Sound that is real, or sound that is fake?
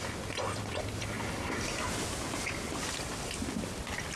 real